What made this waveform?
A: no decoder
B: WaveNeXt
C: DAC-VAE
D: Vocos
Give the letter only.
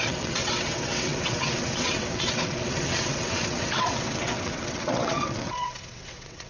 B